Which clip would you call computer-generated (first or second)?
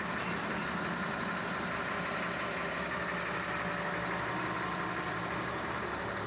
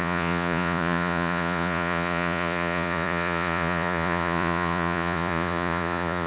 second